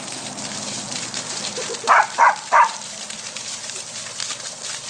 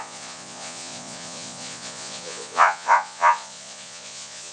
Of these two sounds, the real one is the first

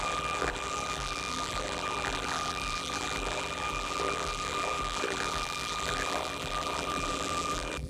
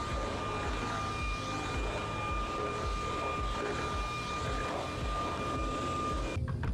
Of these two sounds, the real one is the second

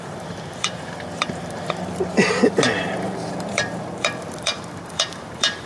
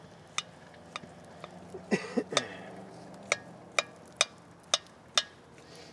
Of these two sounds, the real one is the second